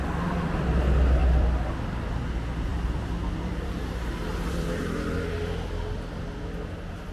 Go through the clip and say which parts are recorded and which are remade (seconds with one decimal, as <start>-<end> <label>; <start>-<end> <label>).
0.0-1.2 recorded; 1.2-1.7 remade; 1.7-2.7 recorded; 2.7-3.9 remade; 3.9-4.3 recorded; 4.3-4.8 remade; 4.8-7.1 recorded